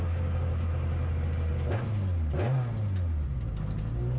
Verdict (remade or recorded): recorded